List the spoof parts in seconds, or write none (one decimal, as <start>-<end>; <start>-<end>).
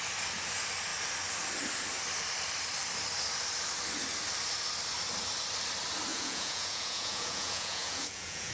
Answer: 6.1-8.5